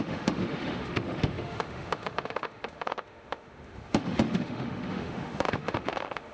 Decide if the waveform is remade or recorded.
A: remade